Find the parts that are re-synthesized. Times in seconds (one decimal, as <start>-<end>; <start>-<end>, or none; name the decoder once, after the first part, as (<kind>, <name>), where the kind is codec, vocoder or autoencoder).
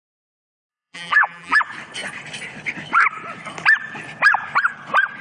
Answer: 0.7-1.6 (vocoder, BigVGAN v2)